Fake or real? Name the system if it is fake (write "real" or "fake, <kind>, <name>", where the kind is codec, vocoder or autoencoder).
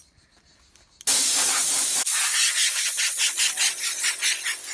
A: real